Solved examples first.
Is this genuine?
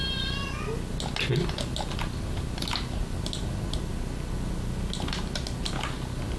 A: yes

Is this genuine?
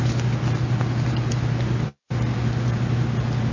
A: yes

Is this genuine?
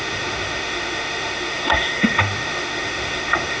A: no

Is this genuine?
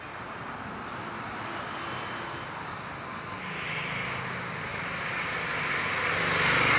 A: yes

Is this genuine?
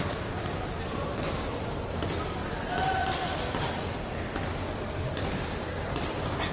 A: yes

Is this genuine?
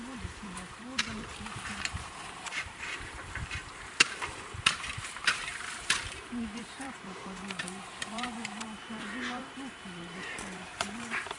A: no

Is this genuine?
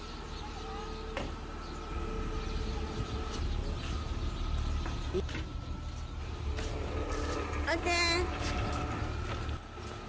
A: yes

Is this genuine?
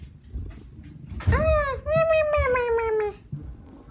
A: yes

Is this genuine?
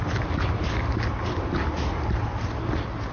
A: yes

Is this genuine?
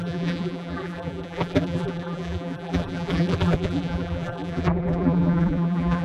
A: no